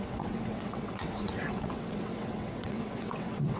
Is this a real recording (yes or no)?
no